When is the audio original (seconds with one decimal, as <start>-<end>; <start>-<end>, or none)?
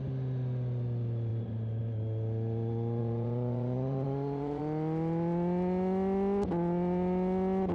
0.0-3.0; 4.6-7.7